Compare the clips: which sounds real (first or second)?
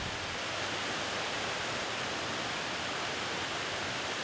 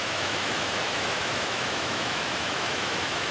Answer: first